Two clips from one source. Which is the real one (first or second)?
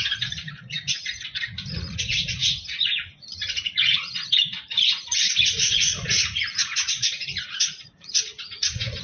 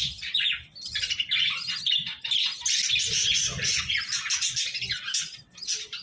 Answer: second